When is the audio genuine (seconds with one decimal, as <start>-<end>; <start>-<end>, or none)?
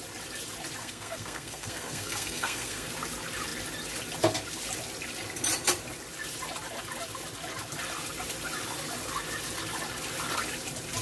0.0-0.8; 2.9-11.0